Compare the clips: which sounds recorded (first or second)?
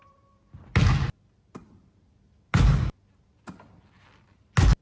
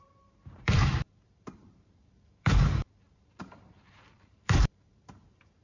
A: first